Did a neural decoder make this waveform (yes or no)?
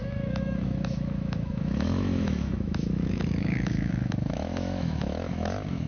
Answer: yes